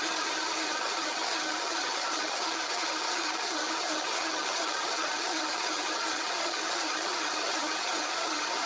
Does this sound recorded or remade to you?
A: remade